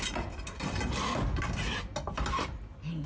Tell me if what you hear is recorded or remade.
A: recorded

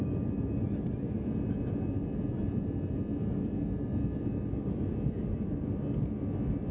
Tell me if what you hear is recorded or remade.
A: recorded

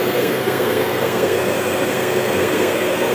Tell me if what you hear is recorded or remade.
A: remade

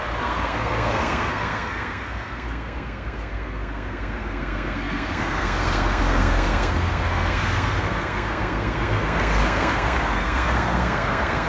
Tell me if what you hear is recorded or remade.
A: remade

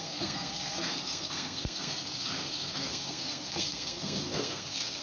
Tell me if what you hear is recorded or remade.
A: remade